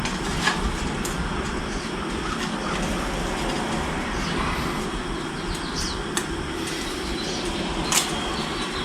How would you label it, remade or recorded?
recorded